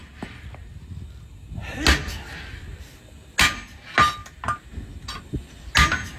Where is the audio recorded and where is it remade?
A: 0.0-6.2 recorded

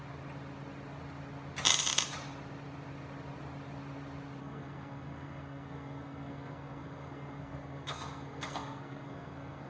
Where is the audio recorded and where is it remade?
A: 0.0-4.4 recorded; 4.4-9.7 remade

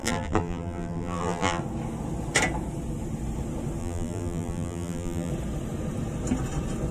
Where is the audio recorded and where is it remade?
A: 0.0-1.6 remade; 1.6-3.8 recorded; 3.8-5.3 remade; 5.3-6.9 recorded

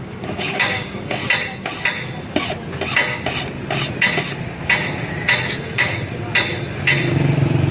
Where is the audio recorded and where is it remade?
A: 0.0-1.2 remade; 1.2-5.6 recorded; 5.6-6.0 remade; 6.0-7.7 recorded

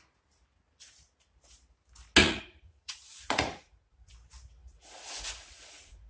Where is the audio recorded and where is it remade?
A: 0.0-2.2 recorded; 2.2-4.1 remade; 4.1-4.6 recorded; 4.6-6.1 remade